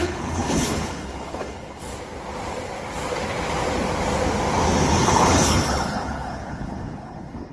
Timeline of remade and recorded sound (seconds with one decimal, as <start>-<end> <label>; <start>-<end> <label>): 0.0-1.9 remade; 1.9-4.9 recorded; 4.9-7.5 remade